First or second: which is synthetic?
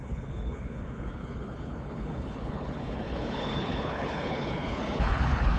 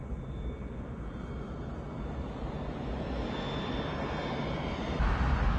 first